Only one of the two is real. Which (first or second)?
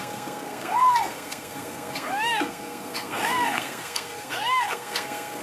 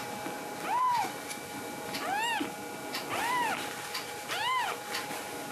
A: second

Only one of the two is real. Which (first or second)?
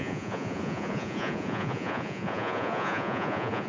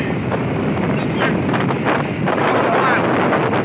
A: second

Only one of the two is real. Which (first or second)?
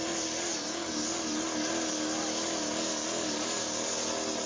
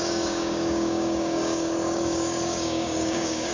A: first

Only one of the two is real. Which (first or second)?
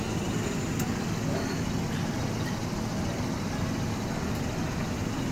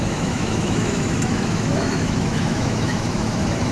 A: first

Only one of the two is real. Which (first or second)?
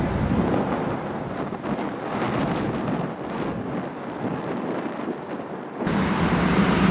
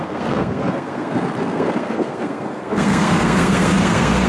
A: first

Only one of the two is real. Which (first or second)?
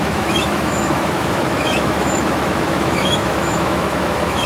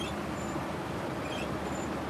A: second